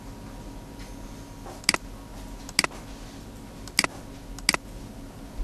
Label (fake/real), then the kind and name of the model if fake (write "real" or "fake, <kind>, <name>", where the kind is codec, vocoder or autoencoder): real